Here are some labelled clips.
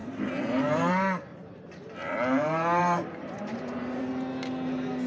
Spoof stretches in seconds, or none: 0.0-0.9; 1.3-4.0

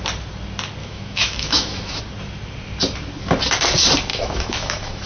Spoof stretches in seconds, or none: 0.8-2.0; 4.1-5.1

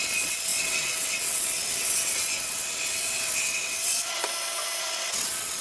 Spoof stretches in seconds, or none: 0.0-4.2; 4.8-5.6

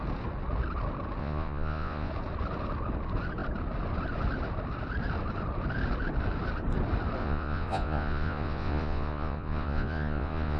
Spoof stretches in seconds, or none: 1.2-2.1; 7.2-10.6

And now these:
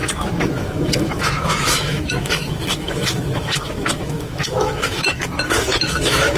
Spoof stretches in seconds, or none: 0.0-6.4

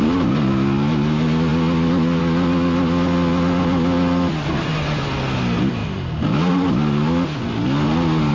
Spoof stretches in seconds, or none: none

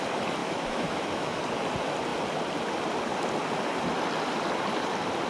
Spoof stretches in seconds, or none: 0.4-1.4